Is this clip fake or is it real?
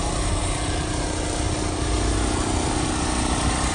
real